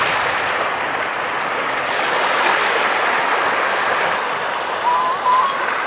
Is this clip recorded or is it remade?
recorded